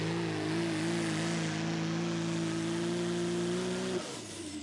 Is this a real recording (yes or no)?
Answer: yes